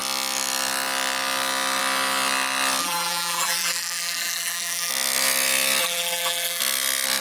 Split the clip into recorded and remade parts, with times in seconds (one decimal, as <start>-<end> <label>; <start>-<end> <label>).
0.0-2.8 recorded; 2.8-4.9 remade; 4.9-5.8 recorded; 5.8-6.6 remade; 6.6-7.2 recorded